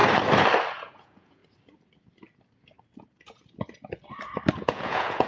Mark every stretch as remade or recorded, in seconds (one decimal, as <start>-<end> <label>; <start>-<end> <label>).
0.0-0.7 recorded; 0.7-1.4 remade; 1.4-4.6 recorded; 4.6-5.3 remade